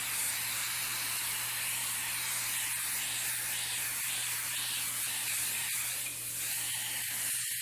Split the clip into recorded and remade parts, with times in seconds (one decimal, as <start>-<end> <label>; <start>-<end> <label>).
0.0-7.6 recorded